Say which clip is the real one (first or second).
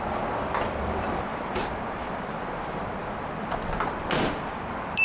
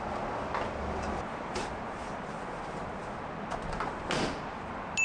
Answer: second